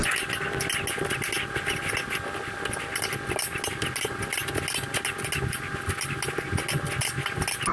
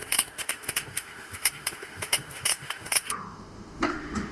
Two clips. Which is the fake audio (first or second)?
second